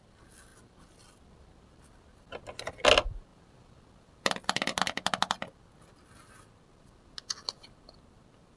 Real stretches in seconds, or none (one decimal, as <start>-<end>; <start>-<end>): 0.0-8.6